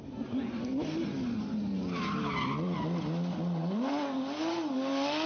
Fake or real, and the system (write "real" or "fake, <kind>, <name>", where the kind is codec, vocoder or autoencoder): real